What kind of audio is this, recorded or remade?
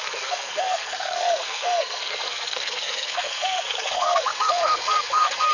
remade